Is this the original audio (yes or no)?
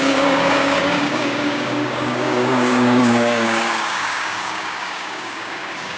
no